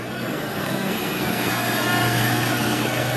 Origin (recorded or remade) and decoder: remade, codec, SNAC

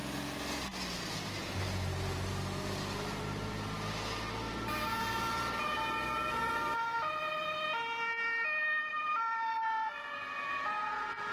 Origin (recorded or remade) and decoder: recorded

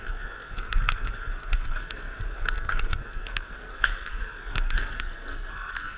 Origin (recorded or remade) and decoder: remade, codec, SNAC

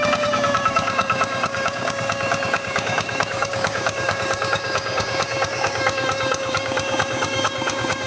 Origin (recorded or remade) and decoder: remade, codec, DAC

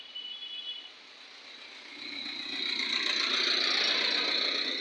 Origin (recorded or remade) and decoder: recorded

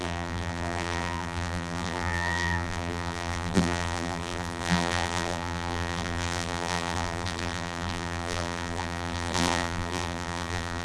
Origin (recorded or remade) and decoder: remade, vocoder, BigVGAN v2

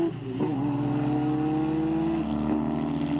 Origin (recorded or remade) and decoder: recorded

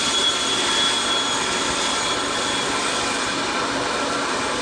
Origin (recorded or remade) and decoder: remade, vocoder, BigVGAN v2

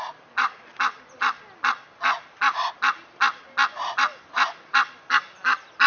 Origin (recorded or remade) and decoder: recorded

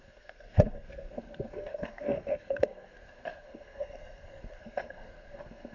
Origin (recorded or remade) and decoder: remade, codec, SNAC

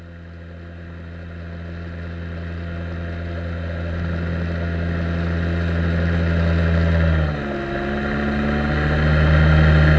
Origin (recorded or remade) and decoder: recorded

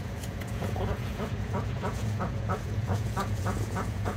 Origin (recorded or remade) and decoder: remade, vocoder, Vocos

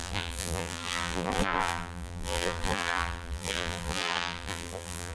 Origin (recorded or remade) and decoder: remade, vocoder, BigVGAN v2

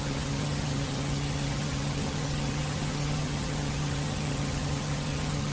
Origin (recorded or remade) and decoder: remade, vocoder, HiFi-GAN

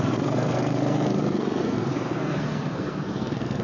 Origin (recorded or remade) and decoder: remade, codec, SNAC